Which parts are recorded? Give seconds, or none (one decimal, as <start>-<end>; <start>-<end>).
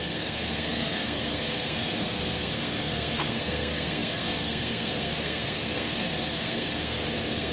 none